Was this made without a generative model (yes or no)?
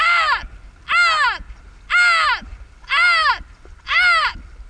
yes